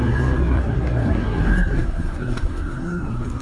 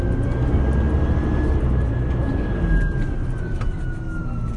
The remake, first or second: first